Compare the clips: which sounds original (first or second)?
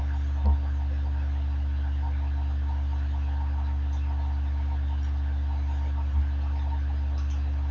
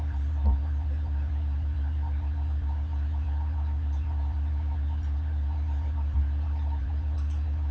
first